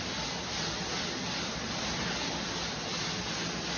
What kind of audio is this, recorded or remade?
recorded